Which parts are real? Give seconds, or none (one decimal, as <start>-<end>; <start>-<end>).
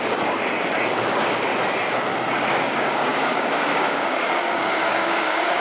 0.4-1.0; 1.5-2.5